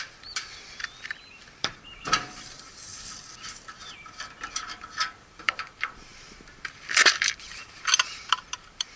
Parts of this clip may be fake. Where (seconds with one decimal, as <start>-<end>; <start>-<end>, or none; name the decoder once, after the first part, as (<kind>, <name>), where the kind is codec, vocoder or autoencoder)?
0.0-7.6 (vocoder, BigVGAN v2); 8.3-9.0